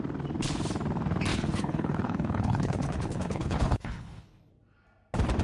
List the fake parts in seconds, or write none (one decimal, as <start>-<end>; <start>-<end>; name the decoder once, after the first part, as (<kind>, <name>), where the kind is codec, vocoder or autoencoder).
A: 1.3-4.5 (codec, HILCodec)